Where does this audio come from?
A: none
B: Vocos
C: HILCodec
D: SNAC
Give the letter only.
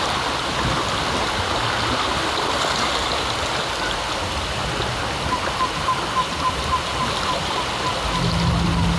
A